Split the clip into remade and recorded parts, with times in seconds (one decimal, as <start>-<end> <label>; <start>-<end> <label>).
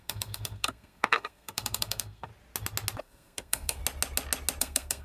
0.0-2.3 remade; 2.3-3.0 recorded; 3.0-3.8 remade; 3.8-4.6 recorded; 4.6-5.0 remade